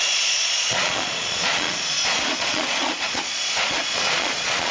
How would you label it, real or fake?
fake